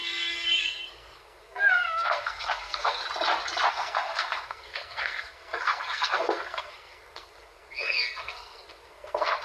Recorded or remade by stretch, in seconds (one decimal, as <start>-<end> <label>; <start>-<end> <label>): 0.0-3.0 remade; 3.0-3.7 recorded; 3.7-9.4 remade